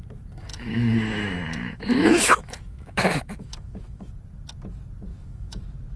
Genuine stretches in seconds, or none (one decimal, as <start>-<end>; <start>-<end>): 0.0-0.5; 4.1-5.1; 5.6-6.0